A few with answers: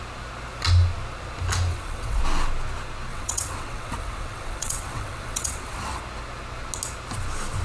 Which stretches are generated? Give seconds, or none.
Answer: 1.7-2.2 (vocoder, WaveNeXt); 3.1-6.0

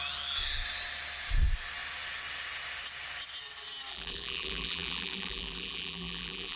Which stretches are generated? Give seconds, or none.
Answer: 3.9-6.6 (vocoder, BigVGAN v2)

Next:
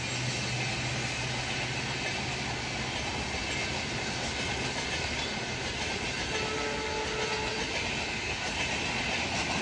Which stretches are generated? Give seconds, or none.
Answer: none

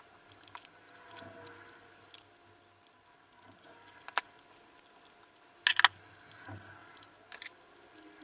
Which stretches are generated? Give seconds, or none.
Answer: none